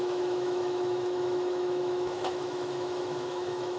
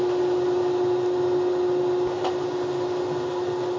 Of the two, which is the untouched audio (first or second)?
second